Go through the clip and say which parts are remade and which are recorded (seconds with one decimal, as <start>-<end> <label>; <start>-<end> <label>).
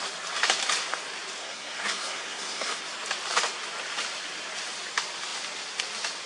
0.0-1.4 recorded; 1.4-2.8 remade; 2.8-6.3 recorded